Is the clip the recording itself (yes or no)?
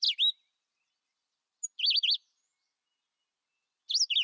yes